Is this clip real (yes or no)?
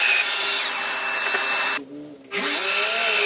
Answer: yes